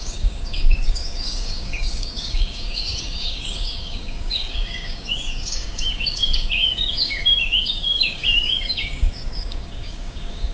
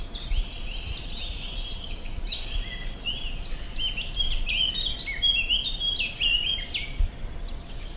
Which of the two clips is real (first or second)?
second